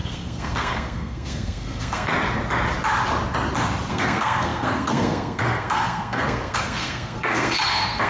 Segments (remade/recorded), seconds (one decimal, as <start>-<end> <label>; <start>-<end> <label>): 0.0-2.1 remade; 2.1-3.9 recorded; 3.9-8.1 remade